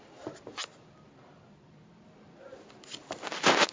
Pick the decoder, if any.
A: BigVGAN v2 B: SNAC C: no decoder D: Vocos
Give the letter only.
C